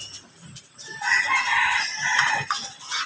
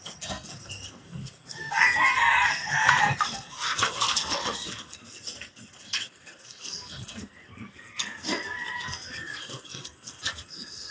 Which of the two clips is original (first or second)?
first